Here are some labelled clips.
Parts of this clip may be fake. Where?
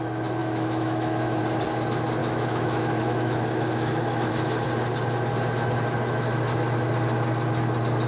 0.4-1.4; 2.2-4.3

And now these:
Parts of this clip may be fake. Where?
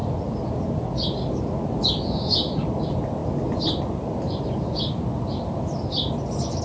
none